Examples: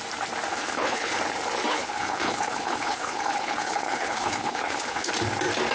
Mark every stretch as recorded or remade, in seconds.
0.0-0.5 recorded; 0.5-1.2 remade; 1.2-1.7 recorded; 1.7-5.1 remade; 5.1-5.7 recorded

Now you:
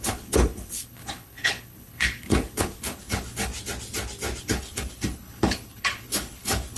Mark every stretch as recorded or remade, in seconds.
0.0-3.5 remade; 3.5-4.4 recorded; 4.4-6.8 remade